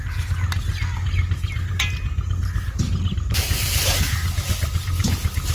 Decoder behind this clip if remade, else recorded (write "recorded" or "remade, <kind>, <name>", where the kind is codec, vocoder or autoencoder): recorded